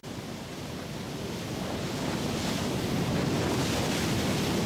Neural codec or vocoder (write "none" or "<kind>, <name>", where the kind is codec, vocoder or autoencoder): none